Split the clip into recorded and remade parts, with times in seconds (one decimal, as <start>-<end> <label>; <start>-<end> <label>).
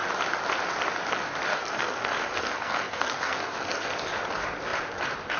0.0-1.5 recorded; 1.5-3.9 remade; 3.9-5.4 recorded